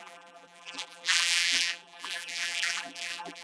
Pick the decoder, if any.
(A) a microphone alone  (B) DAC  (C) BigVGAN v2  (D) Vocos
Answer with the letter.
C